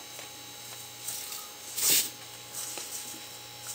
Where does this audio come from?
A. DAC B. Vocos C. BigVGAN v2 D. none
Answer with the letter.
D